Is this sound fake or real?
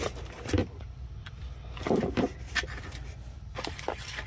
fake